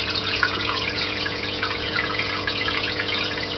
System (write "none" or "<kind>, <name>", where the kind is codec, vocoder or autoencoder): vocoder, Vocos